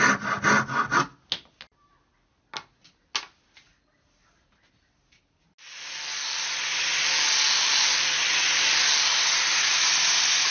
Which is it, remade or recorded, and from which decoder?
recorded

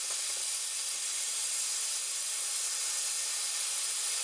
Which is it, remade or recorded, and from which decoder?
recorded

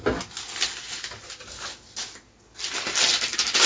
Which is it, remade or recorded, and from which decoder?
recorded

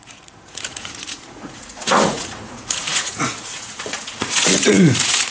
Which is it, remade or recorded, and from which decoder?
remade, vocoder, Vocos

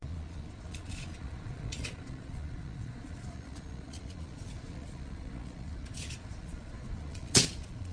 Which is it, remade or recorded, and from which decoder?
remade, vocoder, Vocos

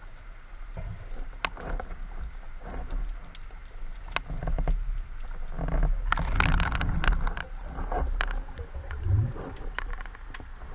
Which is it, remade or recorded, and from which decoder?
recorded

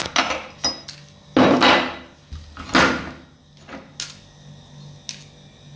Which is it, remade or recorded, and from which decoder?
recorded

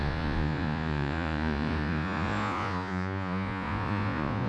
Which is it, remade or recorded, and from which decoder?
remade, vocoder, Vocos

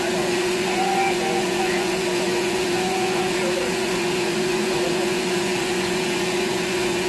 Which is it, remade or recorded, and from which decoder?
remade, vocoder, Vocos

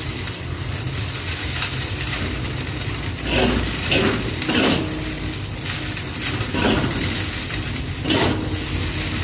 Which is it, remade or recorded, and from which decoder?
recorded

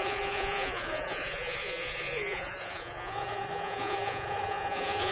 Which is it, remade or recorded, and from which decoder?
remade, vocoder, Vocos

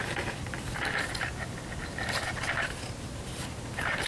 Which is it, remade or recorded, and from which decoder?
recorded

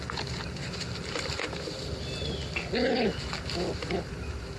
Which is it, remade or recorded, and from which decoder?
recorded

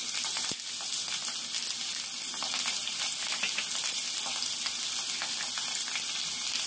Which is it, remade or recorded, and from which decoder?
recorded